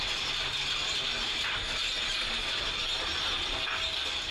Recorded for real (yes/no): yes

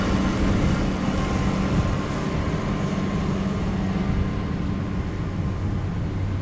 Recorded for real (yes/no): yes